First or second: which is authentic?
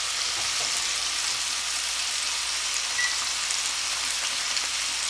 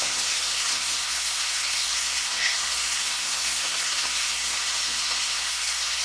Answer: first